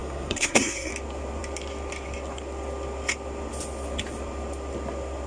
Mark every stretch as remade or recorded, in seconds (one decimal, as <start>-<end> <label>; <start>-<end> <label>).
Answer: 0.0-0.9 remade; 0.9-5.3 recorded